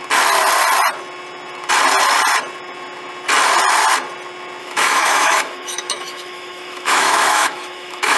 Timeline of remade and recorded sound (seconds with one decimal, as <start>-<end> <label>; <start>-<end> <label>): 0.0-4.6 recorded; 4.6-8.2 remade